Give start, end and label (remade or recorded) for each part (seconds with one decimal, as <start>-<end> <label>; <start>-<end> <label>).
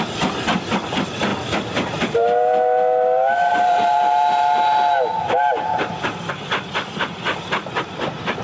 0.0-8.4 recorded